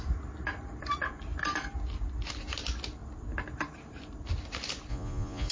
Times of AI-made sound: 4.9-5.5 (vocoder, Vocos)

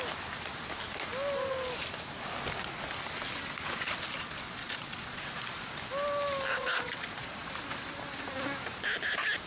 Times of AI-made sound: 4.6-5.2 (vocoder, Vocos); 6.5-7.5

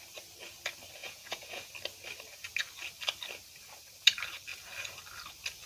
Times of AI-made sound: 1.0-1.7 (vocoder, Vocos)